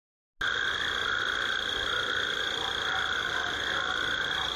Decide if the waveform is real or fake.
real